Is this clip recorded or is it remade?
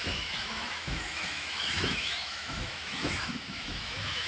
remade